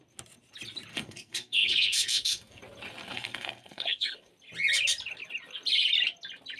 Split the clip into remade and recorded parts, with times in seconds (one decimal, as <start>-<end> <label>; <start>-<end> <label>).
0.0-0.9 recorded; 0.9-2.6 remade; 2.6-3.1 recorded; 3.1-4.3 remade; 4.3-6.6 recorded